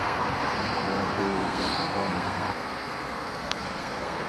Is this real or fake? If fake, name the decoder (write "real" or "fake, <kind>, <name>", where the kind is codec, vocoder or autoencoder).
fake, codec, SNAC